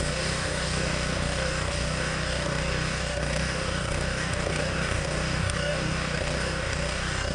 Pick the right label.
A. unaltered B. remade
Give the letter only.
B